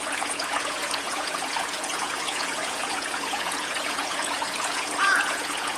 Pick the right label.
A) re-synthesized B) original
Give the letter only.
A